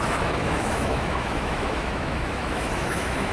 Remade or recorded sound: remade